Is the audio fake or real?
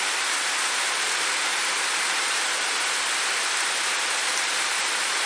real